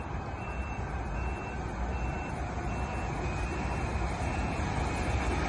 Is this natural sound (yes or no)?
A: yes